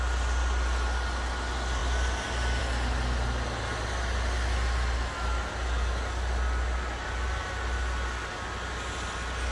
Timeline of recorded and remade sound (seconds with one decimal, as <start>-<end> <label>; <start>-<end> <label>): 0.0-9.5 recorded